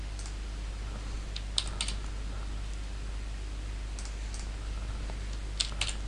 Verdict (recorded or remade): recorded